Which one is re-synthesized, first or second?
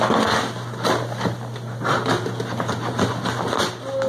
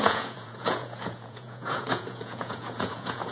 second